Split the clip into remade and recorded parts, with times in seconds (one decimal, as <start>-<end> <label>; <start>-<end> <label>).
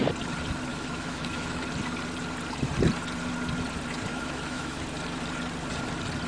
0.0-0.7 recorded; 0.7-1.6 remade; 1.6-4.1 recorded; 4.1-4.8 remade; 4.8-6.3 recorded